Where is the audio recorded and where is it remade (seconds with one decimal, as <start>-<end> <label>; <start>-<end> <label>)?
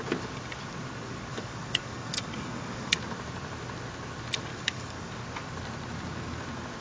0.0-1.3 recorded; 1.3-3.0 remade; 3.0-4.5 recorded; 4.5-5.1 remade; 5.1-6.8 recorded